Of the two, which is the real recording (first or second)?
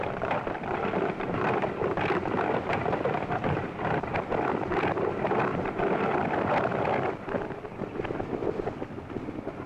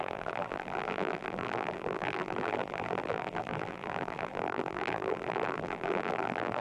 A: first